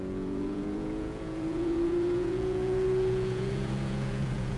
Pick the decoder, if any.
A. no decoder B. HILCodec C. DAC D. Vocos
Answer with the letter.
D